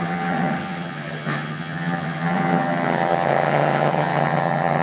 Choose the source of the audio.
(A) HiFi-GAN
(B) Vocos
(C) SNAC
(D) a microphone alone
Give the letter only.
A